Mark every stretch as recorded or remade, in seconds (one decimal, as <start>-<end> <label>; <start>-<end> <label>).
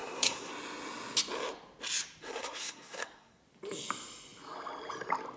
0.0-0.5 remade; 0.5-2.2 recorded; 2.2-3.4 remade; 3.4-5.4 recorded